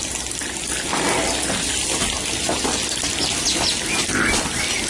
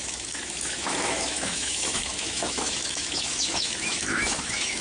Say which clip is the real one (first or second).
first